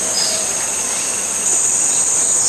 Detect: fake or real fake